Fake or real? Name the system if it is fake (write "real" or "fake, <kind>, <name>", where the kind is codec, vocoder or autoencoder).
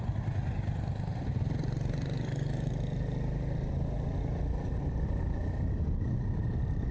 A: real